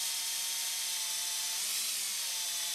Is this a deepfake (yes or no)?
no